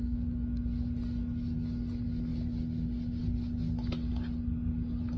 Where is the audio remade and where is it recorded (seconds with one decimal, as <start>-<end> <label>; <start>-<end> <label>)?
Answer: 0.0-5.2 recorded